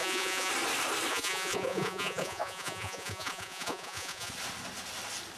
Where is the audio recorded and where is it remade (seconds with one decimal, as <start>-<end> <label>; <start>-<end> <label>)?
0.0-0.5 remade; 0.5-1.1 recorded; 1.1-4.3 remade; 4.3-5.4 recorded